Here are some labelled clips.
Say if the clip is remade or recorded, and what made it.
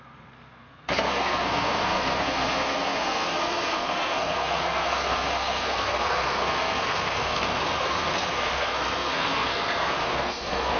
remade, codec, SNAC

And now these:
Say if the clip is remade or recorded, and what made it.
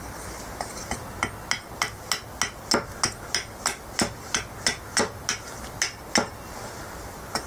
recorded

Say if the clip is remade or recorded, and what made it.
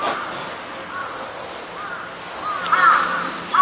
recorded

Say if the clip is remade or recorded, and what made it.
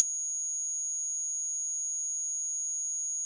recorded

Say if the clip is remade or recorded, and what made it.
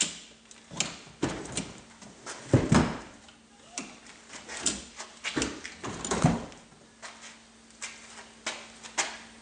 recorded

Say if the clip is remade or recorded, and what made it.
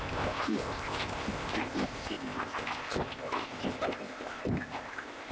remade, codec, ZipCodec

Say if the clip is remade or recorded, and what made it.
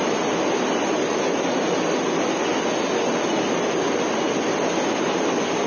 recorded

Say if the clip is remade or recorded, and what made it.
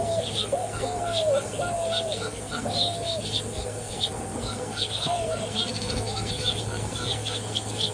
remade, codec, SNAC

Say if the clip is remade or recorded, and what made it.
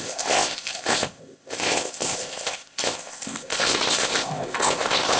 remade, codec, ZipCodec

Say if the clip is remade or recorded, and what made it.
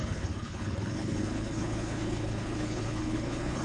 remade, codec, HILCodec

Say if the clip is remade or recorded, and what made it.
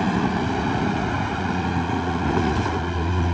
remade, vocoder, Vocos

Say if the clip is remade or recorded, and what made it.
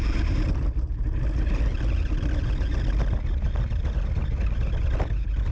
recorded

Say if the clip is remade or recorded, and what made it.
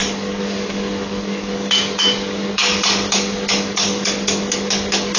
remade, codec, DAC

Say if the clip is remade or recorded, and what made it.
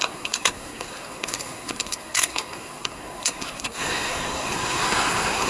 remade, codec, SNAC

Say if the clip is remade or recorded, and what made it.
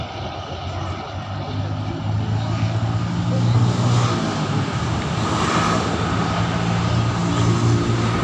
recorded